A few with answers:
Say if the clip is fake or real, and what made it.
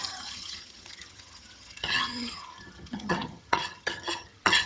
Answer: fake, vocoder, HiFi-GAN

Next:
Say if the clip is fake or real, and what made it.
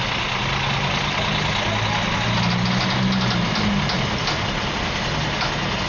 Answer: real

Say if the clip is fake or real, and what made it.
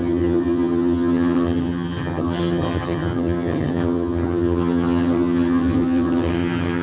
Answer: fake, vocoder, HiFi-GAN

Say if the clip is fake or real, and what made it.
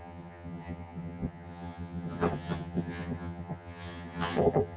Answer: fake, vocoder, HiFi-GAN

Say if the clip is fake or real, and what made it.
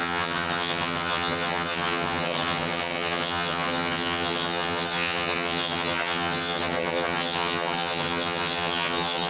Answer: fake, vocoder, HiFi-GAN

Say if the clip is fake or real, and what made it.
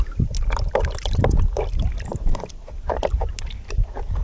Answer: real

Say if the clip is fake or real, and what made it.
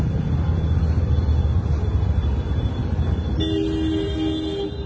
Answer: real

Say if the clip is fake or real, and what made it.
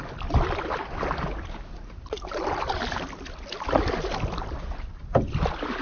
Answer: real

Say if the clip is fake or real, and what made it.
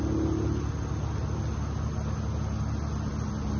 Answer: real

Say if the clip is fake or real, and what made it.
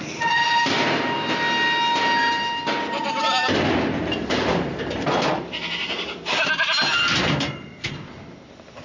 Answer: real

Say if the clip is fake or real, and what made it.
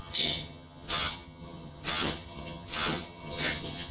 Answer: fake, vocoder, HiFi-GAN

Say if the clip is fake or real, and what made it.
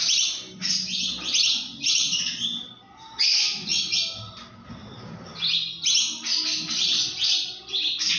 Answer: real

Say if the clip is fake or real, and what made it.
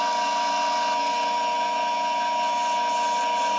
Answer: real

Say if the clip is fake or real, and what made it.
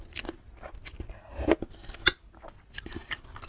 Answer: real